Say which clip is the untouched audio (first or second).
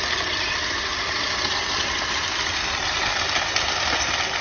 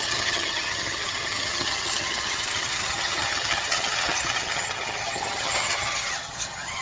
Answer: first